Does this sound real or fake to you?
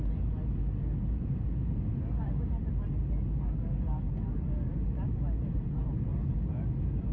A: real